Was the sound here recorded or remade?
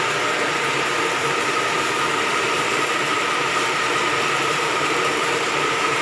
remade